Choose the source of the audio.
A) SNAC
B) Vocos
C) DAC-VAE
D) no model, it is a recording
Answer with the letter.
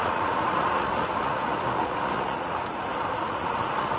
B